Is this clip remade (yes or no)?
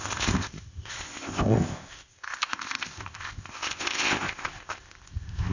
yes